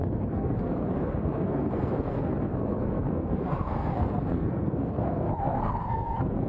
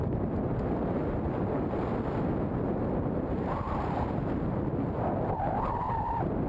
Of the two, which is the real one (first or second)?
second